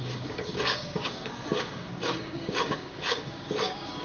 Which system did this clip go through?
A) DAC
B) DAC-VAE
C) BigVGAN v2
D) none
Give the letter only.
A